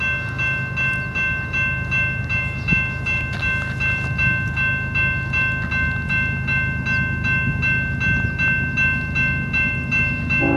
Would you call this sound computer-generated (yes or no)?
no